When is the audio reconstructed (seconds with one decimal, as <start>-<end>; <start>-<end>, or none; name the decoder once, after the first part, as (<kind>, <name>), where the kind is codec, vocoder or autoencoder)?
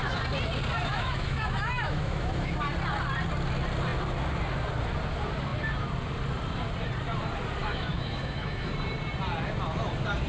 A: 0.9-2.6 (autoencoder, DAC-VAE); 7.6-8.7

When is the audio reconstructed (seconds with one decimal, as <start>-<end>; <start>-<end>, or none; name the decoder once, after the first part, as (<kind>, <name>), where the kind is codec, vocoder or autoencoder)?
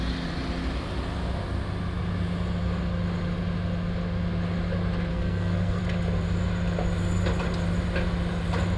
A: 5.1-5.8 (codec, SNAC)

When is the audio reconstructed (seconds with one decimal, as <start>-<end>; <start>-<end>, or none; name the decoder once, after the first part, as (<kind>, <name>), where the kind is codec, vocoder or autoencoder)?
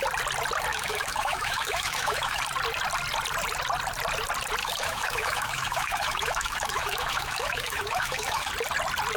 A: 0.7-2.4 (autoencoder, DAC-VAE); 4.6-8.5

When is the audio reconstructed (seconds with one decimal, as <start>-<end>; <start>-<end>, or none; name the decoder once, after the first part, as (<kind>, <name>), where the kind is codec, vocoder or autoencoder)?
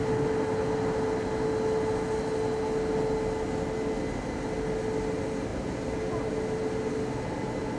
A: none